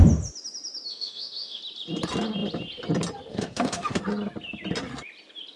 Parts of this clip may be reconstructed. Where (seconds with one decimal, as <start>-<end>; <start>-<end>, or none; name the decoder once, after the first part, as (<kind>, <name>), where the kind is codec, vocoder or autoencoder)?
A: 0.9-1.6 (autoencoder, DAC-VAE); 3.3-4.0